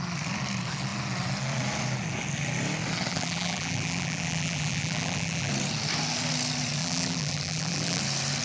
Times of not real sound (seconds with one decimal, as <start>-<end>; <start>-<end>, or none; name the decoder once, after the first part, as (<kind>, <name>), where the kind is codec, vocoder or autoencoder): 3.1-5.5 (vocoder, BigVGAN v2); 6.8-8.0